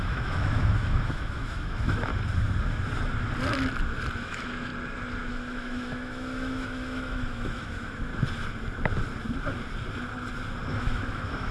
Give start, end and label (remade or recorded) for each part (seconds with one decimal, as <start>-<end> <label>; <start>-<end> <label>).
0.0-2.1 remade; 2.1-4.2 recorded; 4.2-4.7 remade; 4.7-5.3 recorded; 5.3-8.1 remade; 8.1-10.7 recorded; 10.7-11.5 remade